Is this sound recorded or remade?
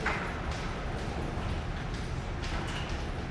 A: recorded